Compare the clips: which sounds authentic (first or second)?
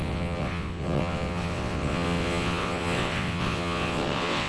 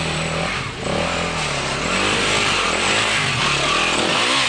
second